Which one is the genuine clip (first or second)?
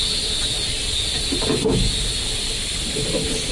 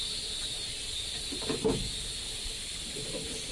first